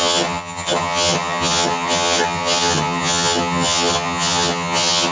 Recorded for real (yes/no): no